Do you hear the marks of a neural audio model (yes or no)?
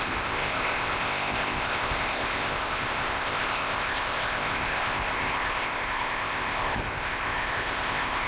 yes